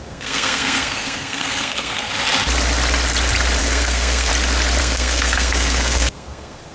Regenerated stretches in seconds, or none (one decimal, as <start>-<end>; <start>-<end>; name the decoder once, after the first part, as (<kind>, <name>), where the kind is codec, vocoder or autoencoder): 0.0-2.1 (codec, SNAC); 3.6-4.3; 4.8-6.7